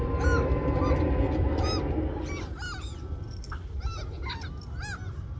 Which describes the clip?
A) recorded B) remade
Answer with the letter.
A